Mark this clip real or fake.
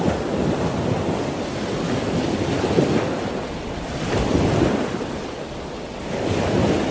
real